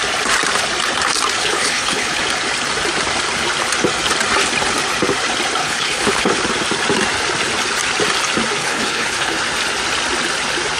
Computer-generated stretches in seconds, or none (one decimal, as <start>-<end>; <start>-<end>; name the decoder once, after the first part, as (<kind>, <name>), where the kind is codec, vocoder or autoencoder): 1.4-2.2 (codec, HILCodec); 5.6-6.3; 8.6-9.4